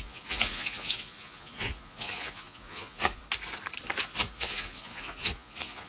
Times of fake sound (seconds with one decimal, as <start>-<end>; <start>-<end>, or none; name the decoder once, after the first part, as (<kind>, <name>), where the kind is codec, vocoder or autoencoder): 0.0-3.2 (vocoder, Vocos); 4.0-5.9